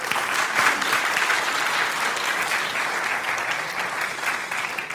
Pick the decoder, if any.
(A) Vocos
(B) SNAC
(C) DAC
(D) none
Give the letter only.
D